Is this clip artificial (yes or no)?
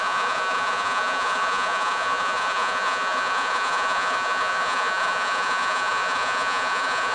yes